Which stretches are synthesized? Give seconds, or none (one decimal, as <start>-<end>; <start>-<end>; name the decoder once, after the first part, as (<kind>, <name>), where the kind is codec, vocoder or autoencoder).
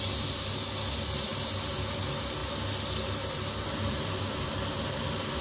none